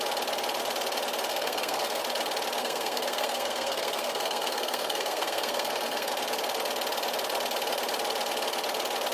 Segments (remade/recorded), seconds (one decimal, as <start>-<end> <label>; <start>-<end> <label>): 0.0-1.3 recorded; 1.3-2.0 remade; 2.0-2.6 recorded; 2.6-6.1 remade; 6.1-9.1 recorded